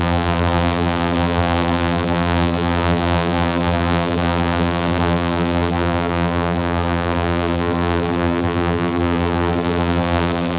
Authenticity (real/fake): fake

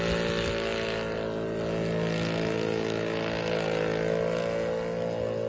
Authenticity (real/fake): real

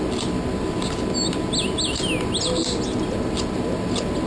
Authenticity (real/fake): real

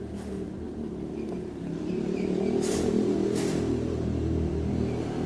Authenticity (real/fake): fake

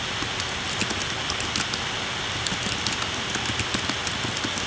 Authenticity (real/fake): real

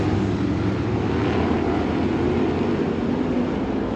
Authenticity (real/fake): real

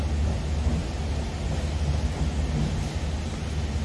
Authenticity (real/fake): real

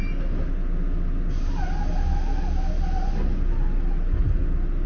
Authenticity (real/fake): real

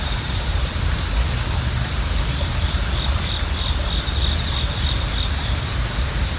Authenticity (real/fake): fake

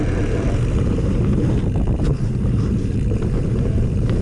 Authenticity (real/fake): fake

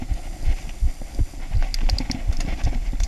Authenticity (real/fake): real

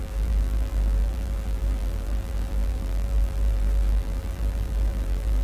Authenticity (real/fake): fake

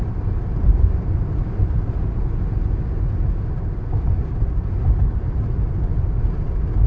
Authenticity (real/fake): real